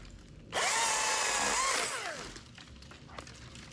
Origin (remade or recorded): recorded